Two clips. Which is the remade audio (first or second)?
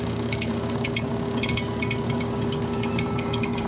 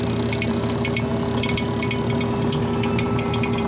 first